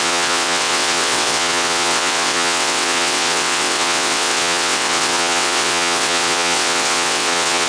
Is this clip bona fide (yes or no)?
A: no